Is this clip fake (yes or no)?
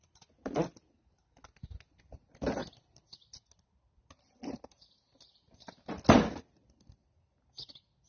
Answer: no